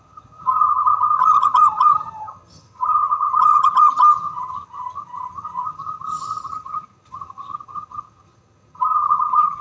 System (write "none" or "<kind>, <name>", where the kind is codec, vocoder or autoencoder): vocoder, HiFi-GAN